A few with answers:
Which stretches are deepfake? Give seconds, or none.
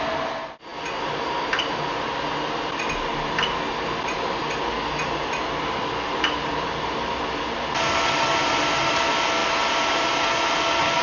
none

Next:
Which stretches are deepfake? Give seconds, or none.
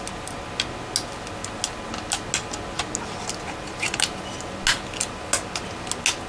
none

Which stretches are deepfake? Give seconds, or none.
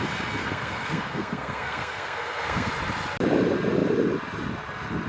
0.4-2.7 (codec, SNAC)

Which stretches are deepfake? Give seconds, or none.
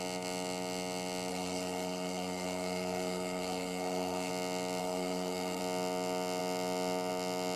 1.3-4.3 (codec, SNAC); 4.8-5.6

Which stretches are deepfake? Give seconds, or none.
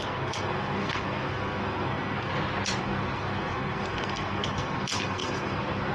0.0-2.3 (codec, SNAC); 2.8-5.9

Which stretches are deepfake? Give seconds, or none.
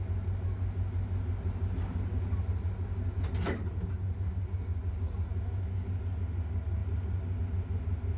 none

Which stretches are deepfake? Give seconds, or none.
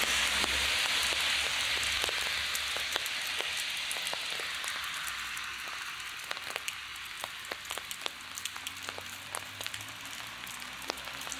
none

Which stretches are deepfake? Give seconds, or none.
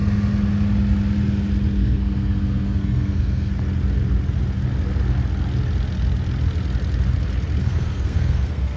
1.8-3.5 (codec, SNAC); 7.6-8.8